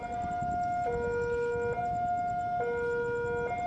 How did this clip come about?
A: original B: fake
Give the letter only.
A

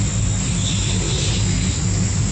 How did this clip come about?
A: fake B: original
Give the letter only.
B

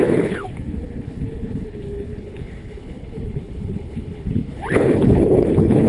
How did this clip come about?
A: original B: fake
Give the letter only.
B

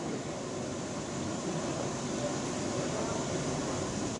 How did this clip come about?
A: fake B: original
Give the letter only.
B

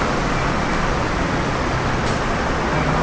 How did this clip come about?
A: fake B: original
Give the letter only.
B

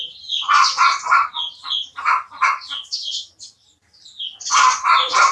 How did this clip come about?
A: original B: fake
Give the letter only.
A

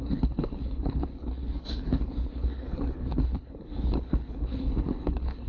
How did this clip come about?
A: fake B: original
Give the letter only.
A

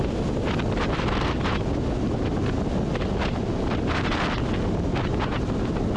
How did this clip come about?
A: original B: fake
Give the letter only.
A